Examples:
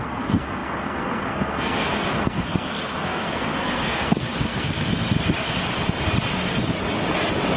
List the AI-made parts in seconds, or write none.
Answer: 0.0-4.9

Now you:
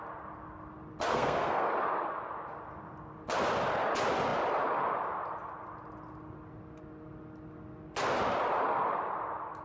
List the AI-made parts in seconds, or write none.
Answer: 1.1-1.7

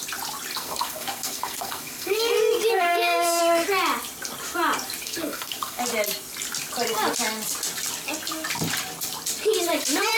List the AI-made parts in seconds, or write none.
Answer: 0.5-2.3; 2.7-3.4; 5.0-5.8

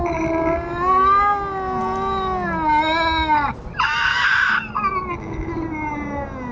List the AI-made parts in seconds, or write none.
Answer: none

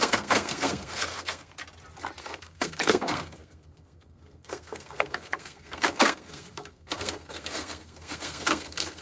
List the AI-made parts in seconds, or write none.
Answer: 0.0-1.5; 2.2-9.0